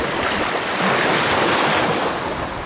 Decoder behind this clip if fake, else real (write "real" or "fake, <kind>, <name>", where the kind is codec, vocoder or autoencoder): real